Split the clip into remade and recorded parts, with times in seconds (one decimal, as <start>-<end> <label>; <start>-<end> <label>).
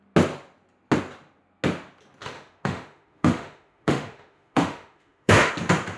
0.0-2.2 recorded; 2.2-5.5 remade; 5.5-6.0 recorded